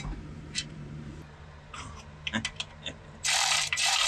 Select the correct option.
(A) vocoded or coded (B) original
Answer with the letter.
A